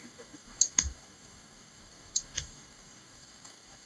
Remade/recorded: remade